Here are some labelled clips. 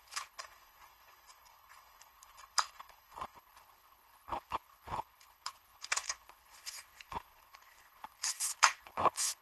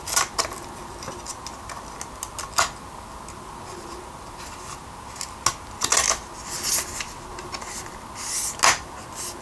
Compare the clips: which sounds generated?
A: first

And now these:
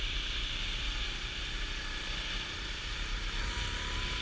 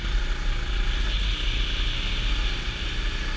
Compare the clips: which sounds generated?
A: first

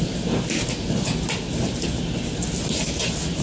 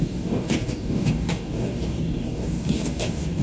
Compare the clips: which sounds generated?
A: second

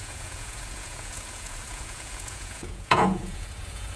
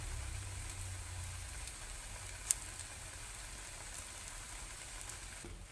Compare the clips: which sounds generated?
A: first